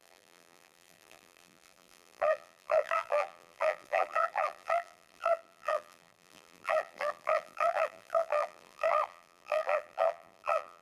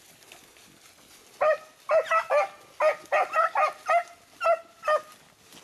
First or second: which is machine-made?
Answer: first